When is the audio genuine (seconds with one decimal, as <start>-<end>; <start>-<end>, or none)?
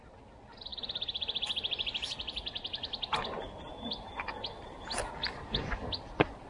0.0-6.5